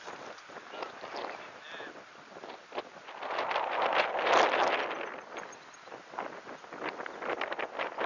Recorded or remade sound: recorded